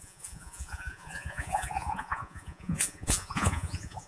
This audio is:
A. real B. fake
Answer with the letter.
B